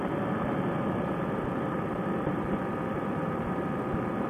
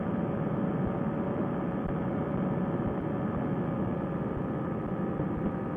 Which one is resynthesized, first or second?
first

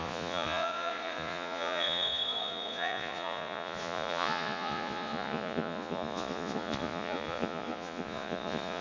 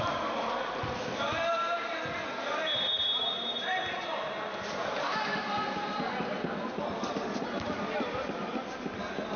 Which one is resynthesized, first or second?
first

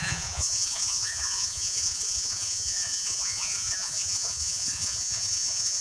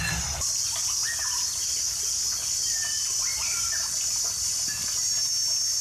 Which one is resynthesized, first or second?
first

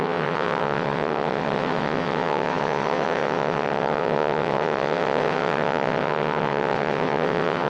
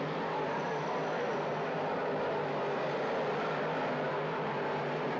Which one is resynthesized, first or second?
first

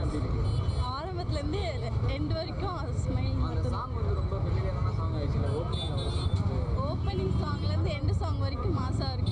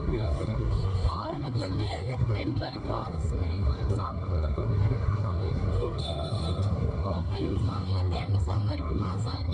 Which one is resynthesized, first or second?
second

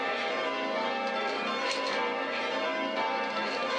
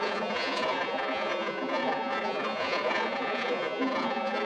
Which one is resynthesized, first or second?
second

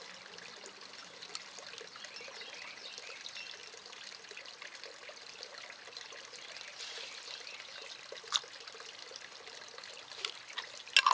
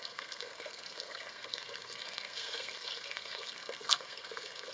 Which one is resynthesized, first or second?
second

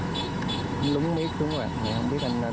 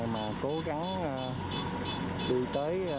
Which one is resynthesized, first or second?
first